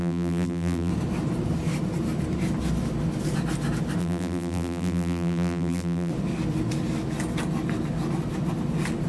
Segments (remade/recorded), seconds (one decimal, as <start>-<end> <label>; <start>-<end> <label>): 0.0-0.9 remade; 0.9-4.0 recorded; 4.0-6.1 remade; 6.1-9.1 recorded